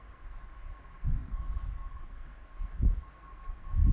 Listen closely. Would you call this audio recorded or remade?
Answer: remade